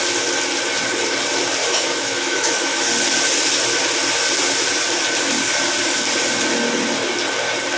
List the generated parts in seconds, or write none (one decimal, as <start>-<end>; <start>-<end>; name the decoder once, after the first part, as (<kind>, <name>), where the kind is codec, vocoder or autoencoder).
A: 1.6-2.8 (autoencoder, DAC-VAE)